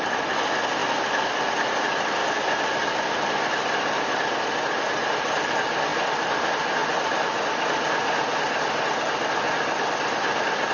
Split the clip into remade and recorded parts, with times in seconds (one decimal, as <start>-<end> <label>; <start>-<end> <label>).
0.0-10.7 recorded